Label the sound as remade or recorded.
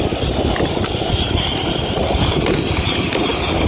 recorded